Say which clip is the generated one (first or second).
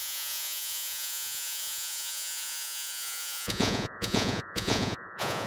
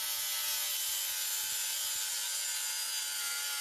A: first